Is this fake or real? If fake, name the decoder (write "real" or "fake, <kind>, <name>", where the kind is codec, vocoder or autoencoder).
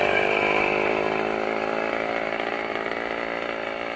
real